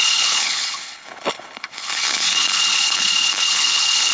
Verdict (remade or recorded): remade